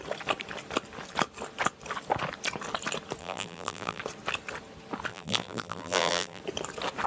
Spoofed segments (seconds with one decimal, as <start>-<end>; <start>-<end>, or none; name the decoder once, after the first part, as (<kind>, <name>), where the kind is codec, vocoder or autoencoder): 3.2-4.0 (vocoder, BigVGAN v2); 5.1-6.4